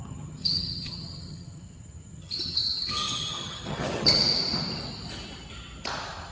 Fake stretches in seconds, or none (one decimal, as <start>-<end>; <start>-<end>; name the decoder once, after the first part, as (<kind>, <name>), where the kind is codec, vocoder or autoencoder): 0.0-4.2 (vocoder, HiFi-GAN)